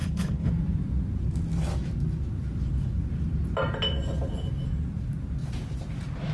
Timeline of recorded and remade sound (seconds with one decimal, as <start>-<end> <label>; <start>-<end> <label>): 0.0-0.5 remade; 0.5-6.3 recorded